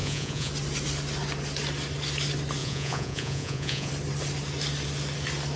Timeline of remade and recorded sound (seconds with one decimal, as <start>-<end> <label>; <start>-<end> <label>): 0.0-0.5 remade; 0.5-2.6 recorded; 2.6-3.9 remade; 3.9-5.6 recorded